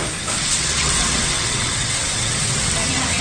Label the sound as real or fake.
fake